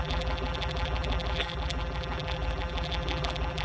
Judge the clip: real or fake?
fake